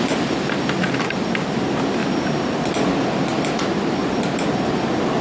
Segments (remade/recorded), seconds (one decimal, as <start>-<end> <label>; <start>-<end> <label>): 0.0-2.0 recorded; 2.0-2.7 remade; 2.7-3.3 recorded; 3.3-3.9 remade; 3.9-5.2 recorded